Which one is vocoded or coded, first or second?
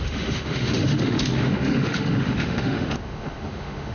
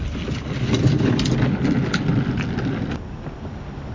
first